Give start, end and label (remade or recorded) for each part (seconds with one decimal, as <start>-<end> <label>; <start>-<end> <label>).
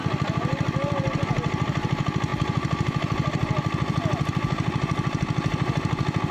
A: 0.0-6.3 recorded